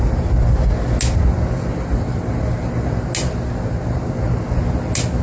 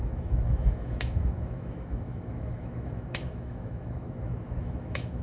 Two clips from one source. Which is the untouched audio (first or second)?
first